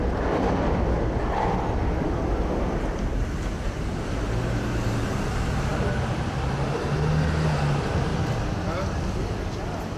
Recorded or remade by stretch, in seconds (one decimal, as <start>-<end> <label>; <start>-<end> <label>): 0.0-10.0 recorded